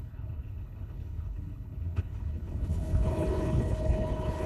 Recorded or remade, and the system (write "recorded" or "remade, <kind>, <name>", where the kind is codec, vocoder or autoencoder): remade, codec, HILCodec